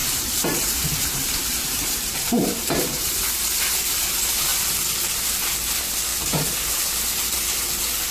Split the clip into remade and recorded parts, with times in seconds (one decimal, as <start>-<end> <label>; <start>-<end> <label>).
0.0-3.1 remade; 3.1-8.1 recorded